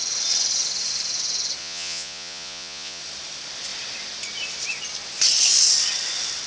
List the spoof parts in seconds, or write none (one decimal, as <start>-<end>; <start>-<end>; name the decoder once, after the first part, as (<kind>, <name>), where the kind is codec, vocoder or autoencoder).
1.6-3.0 (vocoder, Vocos)